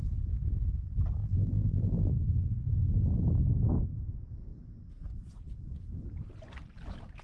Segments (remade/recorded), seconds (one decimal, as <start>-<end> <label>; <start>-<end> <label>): 0.0-1.2 recorded; 1.2-2.1 remade; 2.1-7.2 recorded